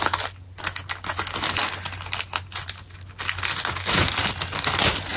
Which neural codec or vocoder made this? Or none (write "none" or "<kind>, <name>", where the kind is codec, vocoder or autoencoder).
none